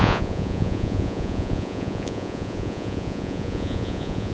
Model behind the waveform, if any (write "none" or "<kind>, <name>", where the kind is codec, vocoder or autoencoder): vocoder, Vocos